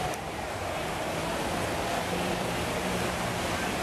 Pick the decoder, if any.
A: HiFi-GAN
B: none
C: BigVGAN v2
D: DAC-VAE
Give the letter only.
C